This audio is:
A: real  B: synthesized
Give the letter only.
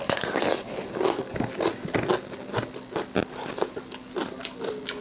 A